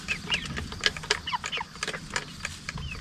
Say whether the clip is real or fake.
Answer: real